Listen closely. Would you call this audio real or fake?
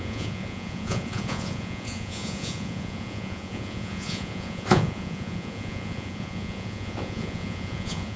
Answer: fake